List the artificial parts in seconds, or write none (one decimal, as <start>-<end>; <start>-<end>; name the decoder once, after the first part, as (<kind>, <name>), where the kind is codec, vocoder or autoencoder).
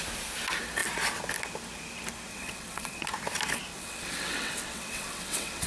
2.3-3.0 (vocoder, WaveNeXt); 3.7-5.7